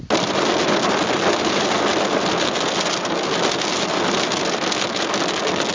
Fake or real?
real